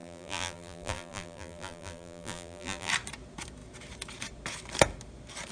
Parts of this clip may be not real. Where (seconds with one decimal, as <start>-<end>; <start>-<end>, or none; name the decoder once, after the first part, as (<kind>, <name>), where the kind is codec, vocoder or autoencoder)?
0.0-2.9 (vocoder, BigVGAN v2)